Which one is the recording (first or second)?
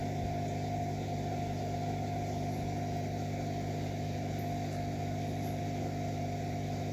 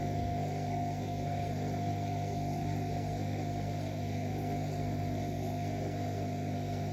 first